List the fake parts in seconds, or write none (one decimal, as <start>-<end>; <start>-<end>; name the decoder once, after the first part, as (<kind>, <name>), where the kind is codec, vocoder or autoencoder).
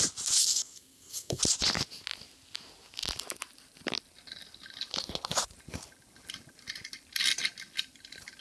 0.4-1.4 (codec, SNAC)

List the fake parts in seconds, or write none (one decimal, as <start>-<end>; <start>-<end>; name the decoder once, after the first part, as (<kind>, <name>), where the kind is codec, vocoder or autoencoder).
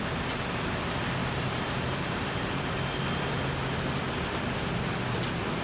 1.2-3.3 (vocoder, BigVGAN v2)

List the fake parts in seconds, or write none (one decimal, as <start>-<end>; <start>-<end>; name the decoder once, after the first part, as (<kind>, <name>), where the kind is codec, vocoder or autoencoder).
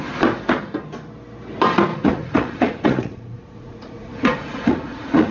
1.9-5.3 (vocoder, Vocos)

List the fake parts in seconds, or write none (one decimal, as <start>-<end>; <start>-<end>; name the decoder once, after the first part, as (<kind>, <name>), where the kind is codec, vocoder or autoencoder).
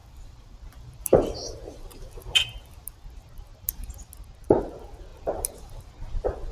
0.0-3.9 (vocoder, BigVGAN v2); 5.1-5.9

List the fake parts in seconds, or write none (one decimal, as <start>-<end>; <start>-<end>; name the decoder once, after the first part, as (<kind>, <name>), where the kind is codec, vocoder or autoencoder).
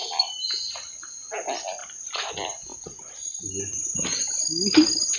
none